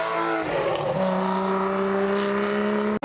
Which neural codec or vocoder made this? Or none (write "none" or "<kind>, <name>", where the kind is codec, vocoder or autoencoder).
none